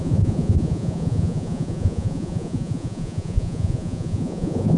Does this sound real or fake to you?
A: fake